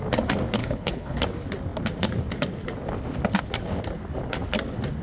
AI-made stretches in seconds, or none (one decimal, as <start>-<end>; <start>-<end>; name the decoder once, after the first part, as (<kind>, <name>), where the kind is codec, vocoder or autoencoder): 0.6-1.2 (codec, HILCodec)